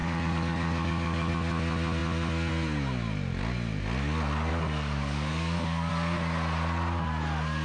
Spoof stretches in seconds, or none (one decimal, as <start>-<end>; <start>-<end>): 0.0-1.3; 4.5-5.9